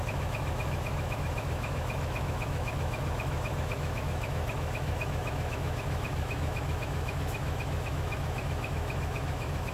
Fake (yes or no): yes